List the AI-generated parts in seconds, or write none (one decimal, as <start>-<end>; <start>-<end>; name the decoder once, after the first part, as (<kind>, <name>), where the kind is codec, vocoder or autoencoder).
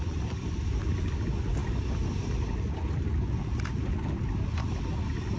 none